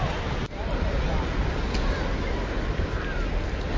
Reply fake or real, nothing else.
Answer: real